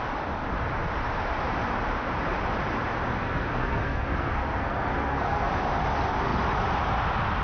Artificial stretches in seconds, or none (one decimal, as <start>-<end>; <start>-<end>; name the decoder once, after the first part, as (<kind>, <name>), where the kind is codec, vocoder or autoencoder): 3.2-5.5 (codec, SNAC)